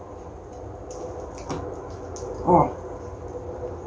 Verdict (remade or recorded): recorded